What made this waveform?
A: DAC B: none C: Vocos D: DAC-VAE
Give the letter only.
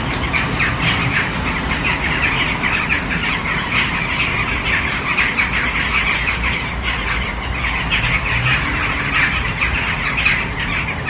B